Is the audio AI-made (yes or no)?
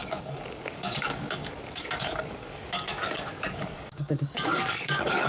yes